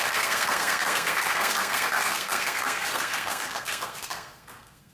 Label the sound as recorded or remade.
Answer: remade